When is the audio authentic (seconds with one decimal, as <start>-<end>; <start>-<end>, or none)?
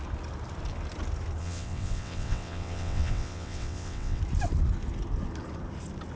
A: 0.0-1.4; 4.2-6.2